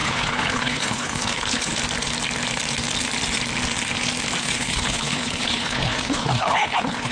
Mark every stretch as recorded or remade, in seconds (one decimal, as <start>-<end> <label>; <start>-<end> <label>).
0.0-1.7 remade; 1.7-4.4 recorded; 4.4-7.1 remade